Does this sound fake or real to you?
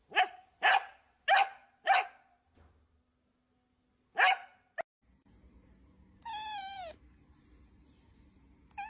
real